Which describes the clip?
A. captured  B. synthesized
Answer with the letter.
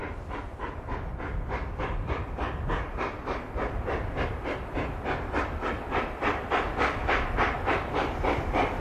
B